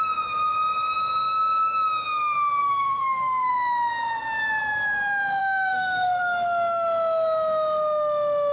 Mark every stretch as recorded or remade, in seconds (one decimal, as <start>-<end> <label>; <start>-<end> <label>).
0.0-2.6 recorded; 2.6-3.5 remade; 3.5-5.4 recorded; 5.4-6.2 remade; 6.2-8.5 recorded